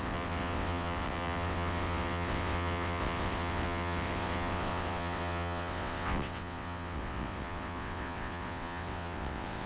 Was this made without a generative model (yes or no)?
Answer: no